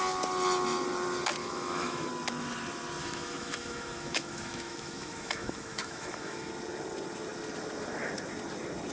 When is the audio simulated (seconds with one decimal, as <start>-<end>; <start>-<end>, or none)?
1.4-2.1; 3.0-6.5